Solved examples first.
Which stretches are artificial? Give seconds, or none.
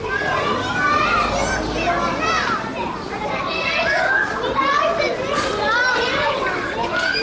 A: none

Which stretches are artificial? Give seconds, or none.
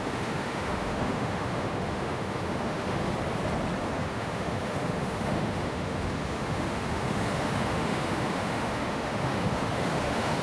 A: 0.0-3.1 (autoencoder, DAC-VAE); 3.8-10.4